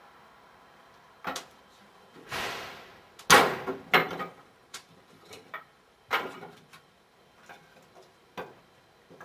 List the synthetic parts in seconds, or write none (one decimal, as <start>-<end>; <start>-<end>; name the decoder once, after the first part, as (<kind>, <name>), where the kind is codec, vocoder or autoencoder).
1.8-2.4 (vocoder, BigVGAN v2); 4.0-7.2